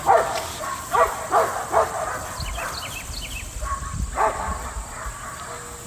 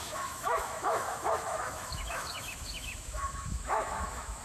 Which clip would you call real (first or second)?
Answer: first